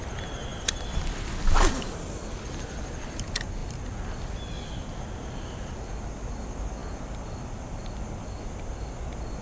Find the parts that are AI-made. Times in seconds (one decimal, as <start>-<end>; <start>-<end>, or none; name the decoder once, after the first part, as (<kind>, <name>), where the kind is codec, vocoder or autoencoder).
none